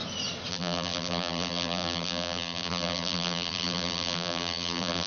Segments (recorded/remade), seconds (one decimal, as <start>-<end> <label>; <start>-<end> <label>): 0.0-0.5 recorded; 0.5-5.1 remade